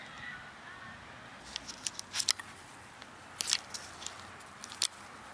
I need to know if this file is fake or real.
real